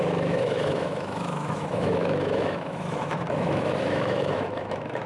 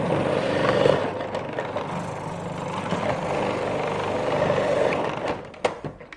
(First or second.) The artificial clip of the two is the first